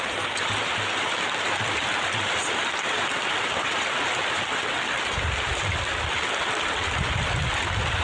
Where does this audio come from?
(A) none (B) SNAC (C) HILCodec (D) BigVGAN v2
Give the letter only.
D